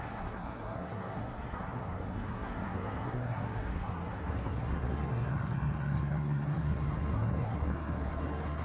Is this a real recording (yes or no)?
no